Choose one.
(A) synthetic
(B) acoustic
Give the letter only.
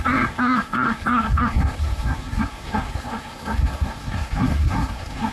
A